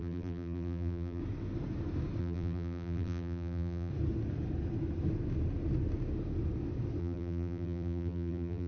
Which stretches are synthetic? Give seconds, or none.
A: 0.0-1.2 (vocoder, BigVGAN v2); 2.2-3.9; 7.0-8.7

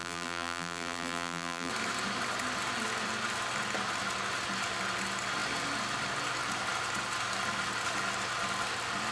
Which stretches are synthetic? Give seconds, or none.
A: 0.0-1.7 (vocoder, BigVGAN v2)